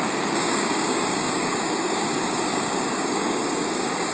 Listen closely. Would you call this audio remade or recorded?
remade